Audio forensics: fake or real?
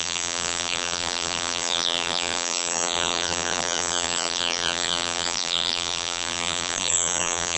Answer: fake